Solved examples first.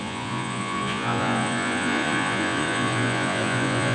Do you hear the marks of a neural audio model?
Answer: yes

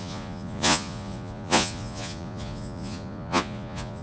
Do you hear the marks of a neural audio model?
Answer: yes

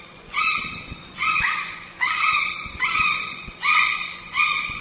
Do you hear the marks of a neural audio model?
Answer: yes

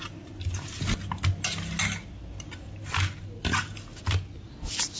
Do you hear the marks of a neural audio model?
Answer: no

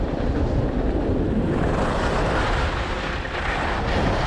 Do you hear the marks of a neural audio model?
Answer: yes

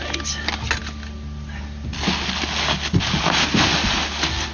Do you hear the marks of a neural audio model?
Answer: no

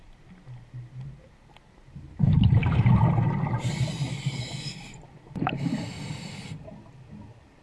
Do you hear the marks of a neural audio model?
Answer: no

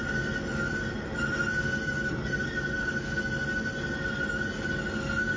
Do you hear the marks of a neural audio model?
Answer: no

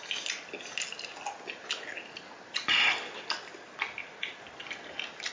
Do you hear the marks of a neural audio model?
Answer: no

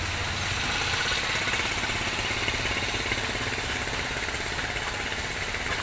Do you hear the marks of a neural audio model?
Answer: no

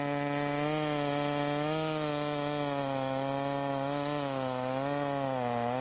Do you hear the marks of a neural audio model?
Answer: no